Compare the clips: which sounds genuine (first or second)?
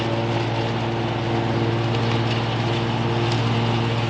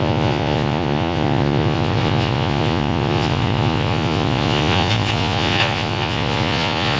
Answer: first